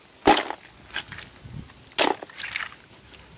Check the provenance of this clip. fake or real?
real